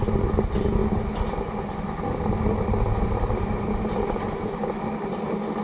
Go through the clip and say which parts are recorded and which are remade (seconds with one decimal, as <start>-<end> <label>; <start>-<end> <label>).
0.0-5.6 recorded

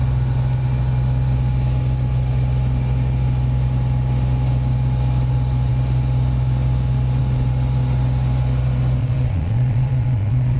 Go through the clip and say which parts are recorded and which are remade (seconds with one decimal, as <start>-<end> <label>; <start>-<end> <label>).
0.0-9.0 recorded; 9.0-10.6 remade

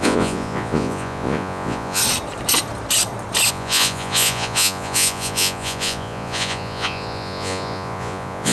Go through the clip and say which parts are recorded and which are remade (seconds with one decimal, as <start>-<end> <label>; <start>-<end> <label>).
0.0-2.0 remade; 2.0-3.5 recorded; 3.5-8.5 remade

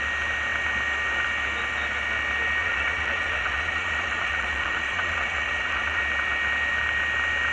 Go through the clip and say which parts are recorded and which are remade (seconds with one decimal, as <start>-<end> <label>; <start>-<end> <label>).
0.0-2.6 recorded; 2.6-6.0 remade; 6.0-7.5 recorded